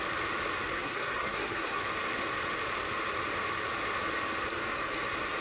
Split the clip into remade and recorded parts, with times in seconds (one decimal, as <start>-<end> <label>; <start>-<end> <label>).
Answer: 0.0-0.7 recorded; 0.7-1.8 remade; 1.8-5.4 recorded